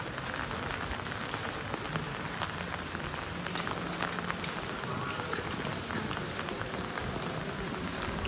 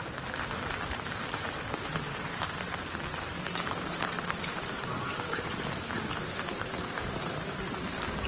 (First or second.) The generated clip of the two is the second